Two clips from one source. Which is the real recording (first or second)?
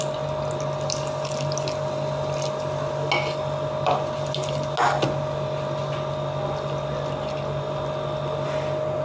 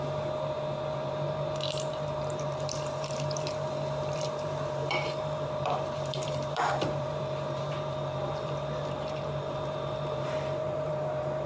first